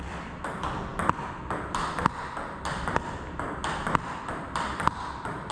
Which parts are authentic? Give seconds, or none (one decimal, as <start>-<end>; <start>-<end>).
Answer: 0.0-5.5